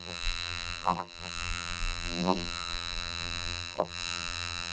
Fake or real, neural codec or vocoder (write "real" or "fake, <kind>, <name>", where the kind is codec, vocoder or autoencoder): fake, vocoder, BigVGAN v2